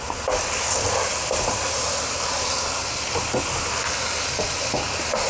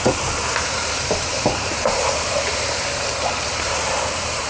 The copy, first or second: second